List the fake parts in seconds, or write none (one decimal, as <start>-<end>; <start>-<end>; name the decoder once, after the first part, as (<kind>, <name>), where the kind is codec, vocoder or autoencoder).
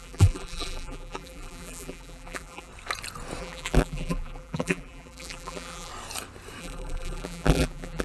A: 0.0-2.7 (vocoder, BigVGAN v2); 3.4-5.9; 6.6-8.0